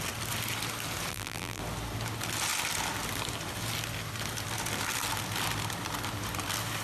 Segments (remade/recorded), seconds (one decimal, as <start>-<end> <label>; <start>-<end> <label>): 0.0-1.1 recorded; 1.1-1.6 remade; 1.6-6.8 recorded